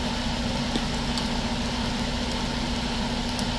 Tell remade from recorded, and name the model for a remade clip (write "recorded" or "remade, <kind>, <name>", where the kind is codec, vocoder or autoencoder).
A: recorded